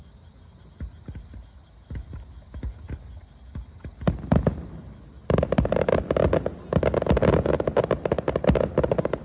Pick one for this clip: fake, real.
real